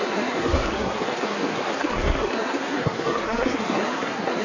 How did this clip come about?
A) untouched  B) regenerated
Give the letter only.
B